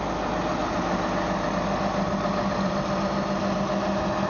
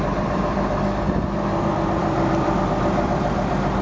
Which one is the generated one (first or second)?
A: second